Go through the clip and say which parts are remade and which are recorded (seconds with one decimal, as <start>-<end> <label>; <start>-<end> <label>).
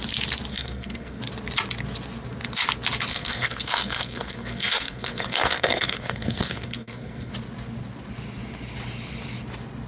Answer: 0.0-0.5 recorded; 0.5-1.2 remade; 1.2-3.1 recorded; 3.1-7.3 remade; 7.3-9.9 recorded